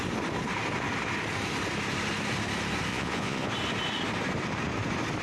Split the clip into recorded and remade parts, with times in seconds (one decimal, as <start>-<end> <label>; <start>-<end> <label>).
0.0-2.9 recorded; 2.9-3.5 remade; 3.5-5.2 recorded